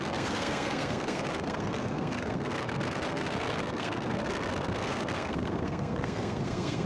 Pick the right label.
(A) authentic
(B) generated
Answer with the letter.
B